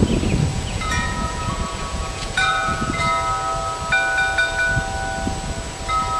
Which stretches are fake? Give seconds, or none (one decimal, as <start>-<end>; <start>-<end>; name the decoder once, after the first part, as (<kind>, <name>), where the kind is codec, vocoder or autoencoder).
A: 0.5-3.0 (vocoder, Vocos)